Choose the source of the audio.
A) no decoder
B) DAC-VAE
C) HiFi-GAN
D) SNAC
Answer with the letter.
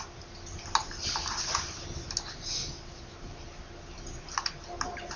A